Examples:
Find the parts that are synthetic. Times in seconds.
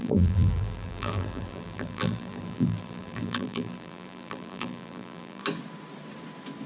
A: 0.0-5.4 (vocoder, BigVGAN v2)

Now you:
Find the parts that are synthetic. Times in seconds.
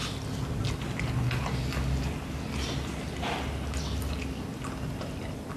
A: none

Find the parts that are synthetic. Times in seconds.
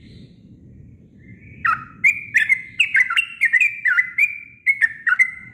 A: 0.0-1.3 (vocoder, BigVGAN v2); 3.5-5.5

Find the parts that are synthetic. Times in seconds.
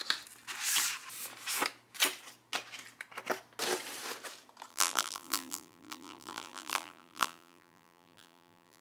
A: 4.7-8.8 (vocoder, BigVGAN v2)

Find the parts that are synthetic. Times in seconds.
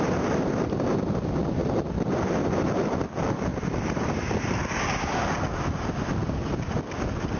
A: 3.5-4.6 (vocoder, BigVGAN v2)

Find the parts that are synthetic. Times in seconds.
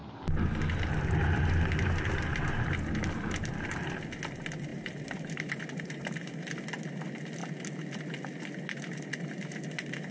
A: 4.7-6.5 (vocoder, BigVGAN v2)